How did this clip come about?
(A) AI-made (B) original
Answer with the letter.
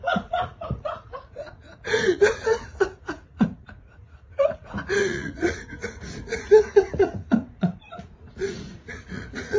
A